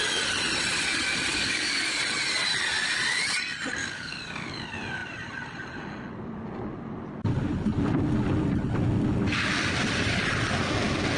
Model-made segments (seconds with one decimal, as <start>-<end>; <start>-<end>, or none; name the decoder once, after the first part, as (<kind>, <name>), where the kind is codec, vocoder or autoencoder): 1.3-2.0 (codec, DAC); 3.8-4.5